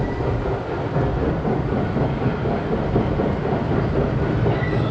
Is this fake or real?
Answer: real